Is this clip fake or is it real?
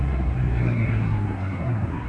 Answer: fake